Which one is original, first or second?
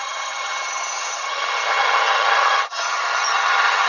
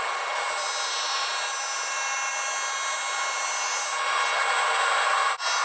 second